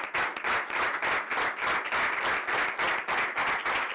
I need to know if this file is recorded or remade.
recorded